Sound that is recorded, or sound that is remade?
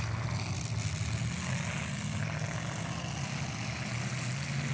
recorded